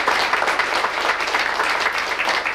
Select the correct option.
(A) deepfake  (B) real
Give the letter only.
B